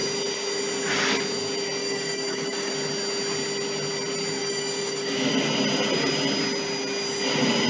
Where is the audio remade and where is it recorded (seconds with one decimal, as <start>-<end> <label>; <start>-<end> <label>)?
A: 0.0-1.8 recorded; 1.8-2.7 remade; 2.7-4.4 recorded; 4.4-5.3 remade; 5.3-7.7 recorded